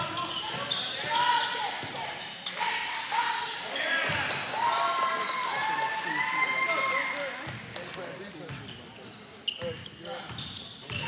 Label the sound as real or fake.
real